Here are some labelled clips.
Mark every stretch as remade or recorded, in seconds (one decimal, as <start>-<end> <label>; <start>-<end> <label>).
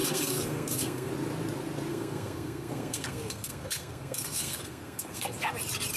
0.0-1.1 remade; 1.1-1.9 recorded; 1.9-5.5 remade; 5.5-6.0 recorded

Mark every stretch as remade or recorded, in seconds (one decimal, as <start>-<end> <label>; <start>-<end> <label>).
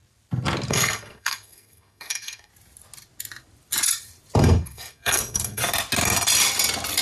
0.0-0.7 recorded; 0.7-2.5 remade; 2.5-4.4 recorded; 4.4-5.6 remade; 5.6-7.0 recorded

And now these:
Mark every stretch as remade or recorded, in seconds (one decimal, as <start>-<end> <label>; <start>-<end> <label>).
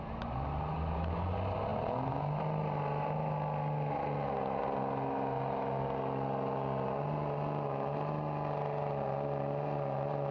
0.0-10.3 recorded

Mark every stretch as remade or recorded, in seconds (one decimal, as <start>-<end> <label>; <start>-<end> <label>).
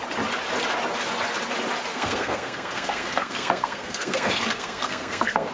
0.0-1.9 recorded; 1.9-5.5 remade